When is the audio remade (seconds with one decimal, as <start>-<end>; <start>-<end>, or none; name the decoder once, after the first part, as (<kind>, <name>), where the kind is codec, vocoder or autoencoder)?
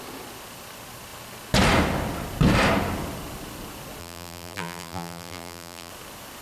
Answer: 4.0-5.9 (vocoder, BigVGAN v2)